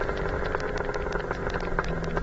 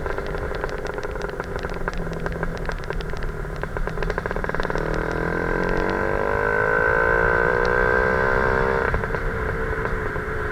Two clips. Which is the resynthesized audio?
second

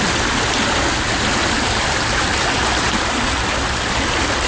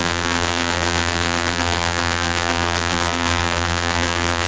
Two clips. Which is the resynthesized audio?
second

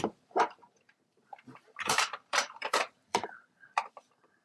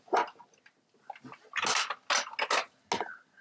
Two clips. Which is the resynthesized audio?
first